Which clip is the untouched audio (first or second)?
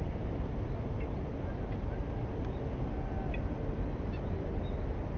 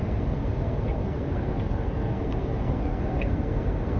first